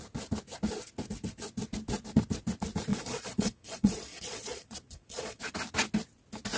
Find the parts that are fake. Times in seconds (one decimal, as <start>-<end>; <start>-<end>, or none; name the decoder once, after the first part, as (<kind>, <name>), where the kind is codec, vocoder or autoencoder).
2.9-5.4 (vocoder, Vocos)